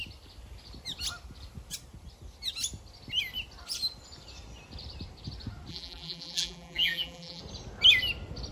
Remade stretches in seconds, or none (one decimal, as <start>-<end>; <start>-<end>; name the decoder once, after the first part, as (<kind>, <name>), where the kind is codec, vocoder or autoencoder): 5.7-7.4 (vocoder, BigVGAN v2)